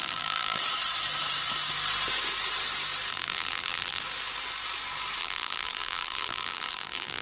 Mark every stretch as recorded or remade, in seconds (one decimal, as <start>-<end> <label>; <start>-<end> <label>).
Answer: 0.0-0.6 remade; 0.6-3.1 recorded; 3.1-4.0 remade; 4.0-5.2 recorded; 5.2-7.2 remade